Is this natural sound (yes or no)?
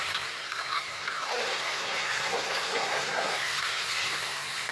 no